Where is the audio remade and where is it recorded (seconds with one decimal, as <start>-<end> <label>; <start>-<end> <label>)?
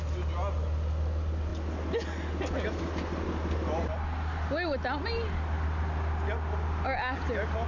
0.0-7.7 recorded